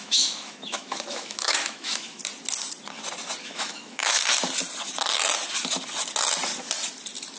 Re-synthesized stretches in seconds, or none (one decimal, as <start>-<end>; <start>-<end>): 0.0-2.2; 3.4-4.2